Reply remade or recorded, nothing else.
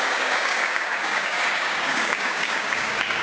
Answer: remade